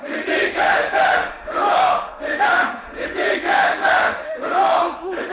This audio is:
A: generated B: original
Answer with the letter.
A